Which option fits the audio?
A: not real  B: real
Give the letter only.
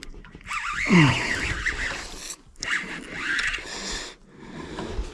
B